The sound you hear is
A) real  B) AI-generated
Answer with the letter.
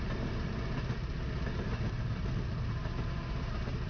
A